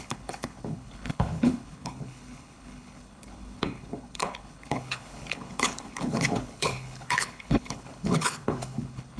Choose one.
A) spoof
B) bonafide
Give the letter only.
A